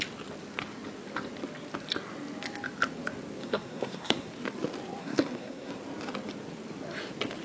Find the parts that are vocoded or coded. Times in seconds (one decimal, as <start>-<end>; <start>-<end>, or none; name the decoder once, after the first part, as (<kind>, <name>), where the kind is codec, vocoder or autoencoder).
3.4-4.3 (codec, SNAC); 5.0-5.8